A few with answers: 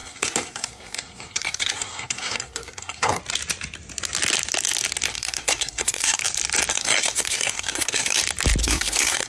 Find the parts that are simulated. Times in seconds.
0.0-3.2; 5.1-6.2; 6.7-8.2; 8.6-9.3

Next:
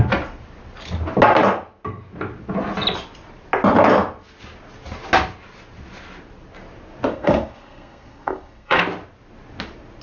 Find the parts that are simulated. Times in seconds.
7.1-8.8

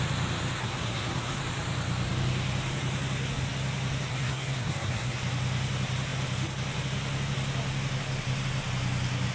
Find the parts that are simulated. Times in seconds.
0.6-1.4; 4.1-5.2

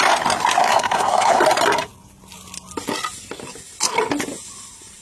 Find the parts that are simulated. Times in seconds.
0.6-1.4

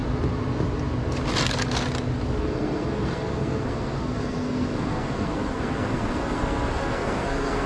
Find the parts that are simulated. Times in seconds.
2.4-7.7

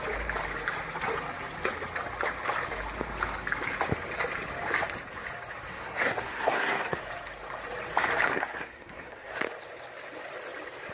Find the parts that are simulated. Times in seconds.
5.7-7.0; 8.3-9.3